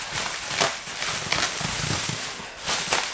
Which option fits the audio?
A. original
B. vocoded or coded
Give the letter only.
A